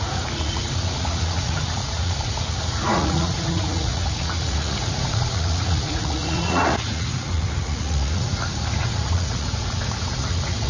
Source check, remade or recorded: remade